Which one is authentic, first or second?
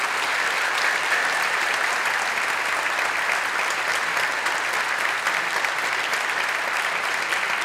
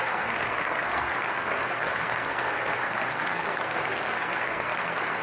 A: first